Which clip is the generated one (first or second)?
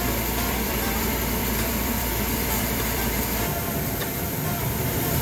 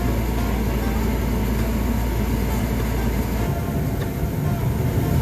first